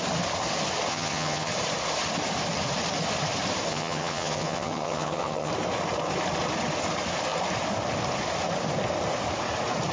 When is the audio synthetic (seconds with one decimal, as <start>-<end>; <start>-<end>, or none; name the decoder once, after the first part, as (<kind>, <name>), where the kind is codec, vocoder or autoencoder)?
0.9-1.5 (vocoder, HiFi-GAN); 3.7-5.5